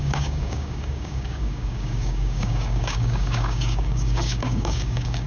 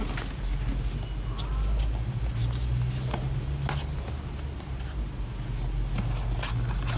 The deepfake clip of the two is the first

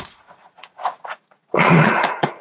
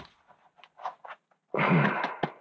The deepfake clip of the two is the first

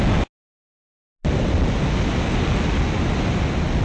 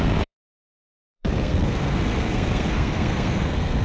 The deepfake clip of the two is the second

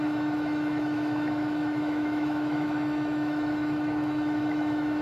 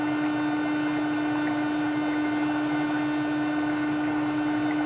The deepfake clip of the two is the first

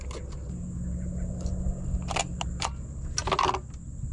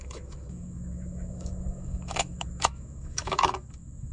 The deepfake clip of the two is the second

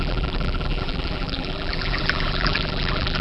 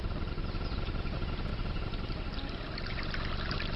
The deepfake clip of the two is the first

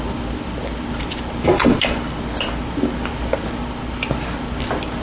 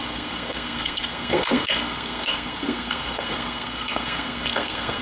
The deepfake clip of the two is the second